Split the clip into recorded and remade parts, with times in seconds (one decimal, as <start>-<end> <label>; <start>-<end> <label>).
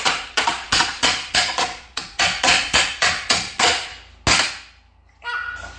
0.0-3.9 remade; 3.9-5.8 recorded